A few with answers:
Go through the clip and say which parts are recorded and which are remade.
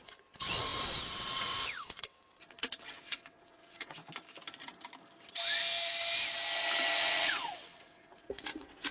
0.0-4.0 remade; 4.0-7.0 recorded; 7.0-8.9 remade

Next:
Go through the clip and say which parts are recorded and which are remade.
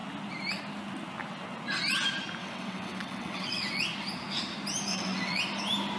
0.0-2.4 recorded; 2.4-3.8 remade; 3.8-4.9 recorded; 4.9-5.4 remade; 5.4-6.0 recorded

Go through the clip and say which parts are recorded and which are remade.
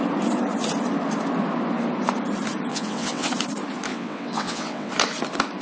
0.0-2.7 recorded; 2.7-3.3 remade; 3.3-3.9 recorded; 3.9-4.9 remade; 4.9-5.6 recorded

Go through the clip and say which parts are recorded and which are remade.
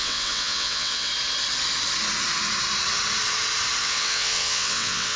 0.0-1.1 remade; 1.1-3.8 recorded; 3.8-5.2 remade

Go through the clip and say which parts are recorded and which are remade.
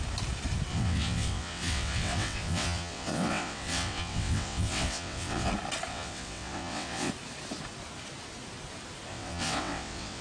0.0-0.7 recorded; 0.7-5.5 remade; 5.5-5.9 recorded; 5.9-7.1 remade; 7.1-9.1 recorded; 9.1-10.2 remade